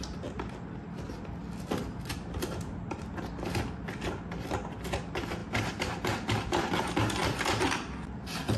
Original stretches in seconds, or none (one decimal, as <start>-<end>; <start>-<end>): 0.0-7.2